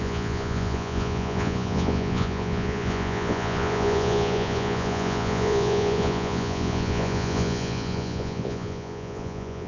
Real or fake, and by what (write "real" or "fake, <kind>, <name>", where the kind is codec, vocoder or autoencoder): fake, vocoder, Vocos